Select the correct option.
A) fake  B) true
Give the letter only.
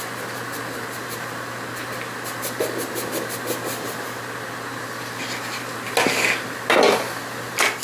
B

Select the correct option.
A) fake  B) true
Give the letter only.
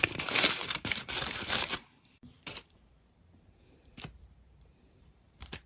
A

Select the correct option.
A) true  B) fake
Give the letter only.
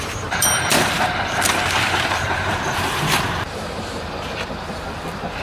B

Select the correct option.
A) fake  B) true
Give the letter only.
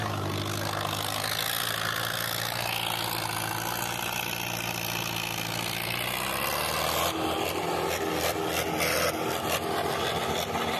B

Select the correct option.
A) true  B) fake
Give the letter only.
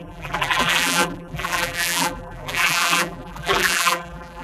B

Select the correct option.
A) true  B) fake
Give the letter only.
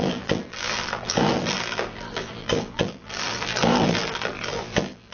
B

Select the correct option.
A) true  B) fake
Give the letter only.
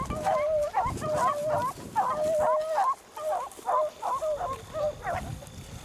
A